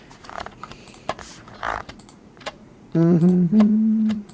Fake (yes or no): yes